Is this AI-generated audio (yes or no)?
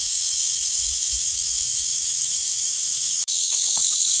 yes